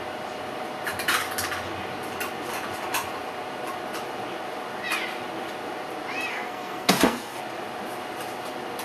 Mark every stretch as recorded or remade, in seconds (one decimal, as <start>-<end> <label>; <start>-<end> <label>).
0.0-6.3 recorded; 6.3-7.4 remade; 7.4-8.8 recorded